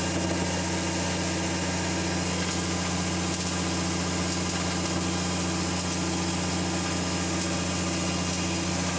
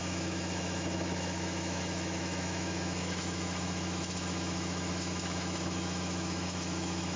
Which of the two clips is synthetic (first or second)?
second